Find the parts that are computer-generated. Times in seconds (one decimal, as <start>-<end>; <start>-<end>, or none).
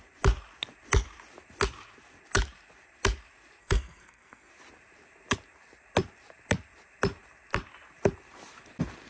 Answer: 3.6-4.5